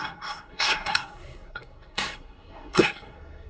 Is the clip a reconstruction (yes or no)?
yes